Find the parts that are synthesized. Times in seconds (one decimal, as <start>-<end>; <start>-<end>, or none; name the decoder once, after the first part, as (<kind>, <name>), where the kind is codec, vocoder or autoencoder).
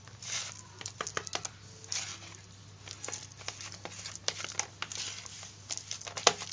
none